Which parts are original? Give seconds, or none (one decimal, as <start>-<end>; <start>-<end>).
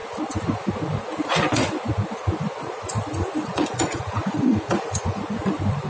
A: 0.0-3.4; 5.2-5.9